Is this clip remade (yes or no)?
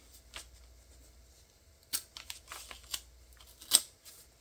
no